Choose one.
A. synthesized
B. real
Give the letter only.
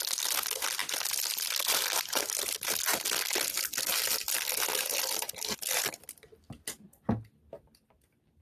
B